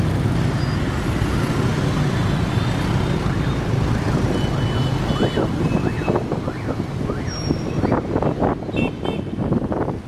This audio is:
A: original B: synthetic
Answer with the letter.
A